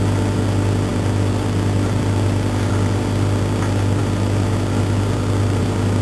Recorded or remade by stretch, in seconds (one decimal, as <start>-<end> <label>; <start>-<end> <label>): 0.0-6.0 recorded